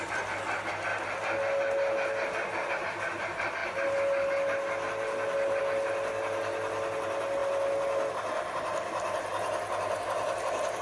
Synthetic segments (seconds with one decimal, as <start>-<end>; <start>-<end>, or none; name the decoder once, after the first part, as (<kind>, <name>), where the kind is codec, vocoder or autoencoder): none